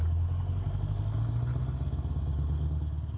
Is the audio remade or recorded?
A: recorded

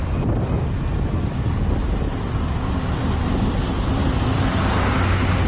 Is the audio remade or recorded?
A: recorded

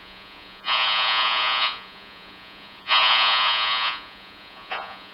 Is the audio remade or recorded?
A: remade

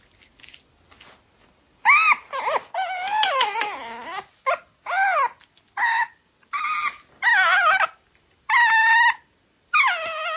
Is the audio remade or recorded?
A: recorded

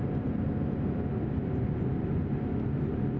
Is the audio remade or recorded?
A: recorded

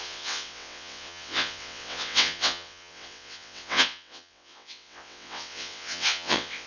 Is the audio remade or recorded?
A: remade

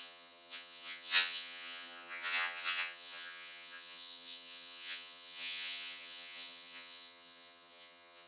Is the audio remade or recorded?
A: remade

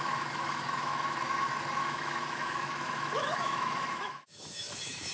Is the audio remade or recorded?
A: remade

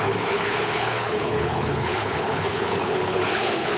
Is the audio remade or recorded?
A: remade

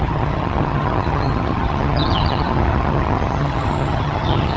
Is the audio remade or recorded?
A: remade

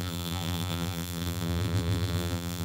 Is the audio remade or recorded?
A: remade